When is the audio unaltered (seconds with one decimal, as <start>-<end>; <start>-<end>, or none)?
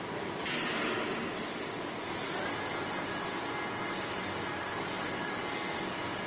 0.0-4.5; 5.6-6.3